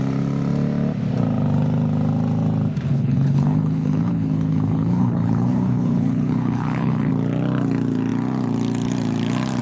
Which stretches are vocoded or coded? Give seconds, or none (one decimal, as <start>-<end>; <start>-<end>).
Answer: 2.9-7.1